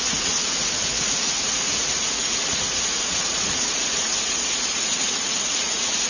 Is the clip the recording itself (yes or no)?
no